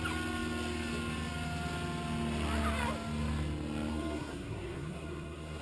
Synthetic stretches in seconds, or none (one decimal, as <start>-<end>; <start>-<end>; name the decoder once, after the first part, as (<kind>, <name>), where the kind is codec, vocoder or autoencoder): 3.9-5.6 (codec, SNAC)